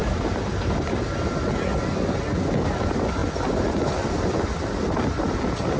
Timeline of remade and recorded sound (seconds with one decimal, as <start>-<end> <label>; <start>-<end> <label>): 0.0-1.0 remade; 1.0-5.8 recorded